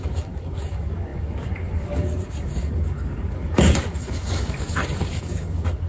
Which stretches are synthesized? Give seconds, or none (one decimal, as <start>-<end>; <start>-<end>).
0.0-5.9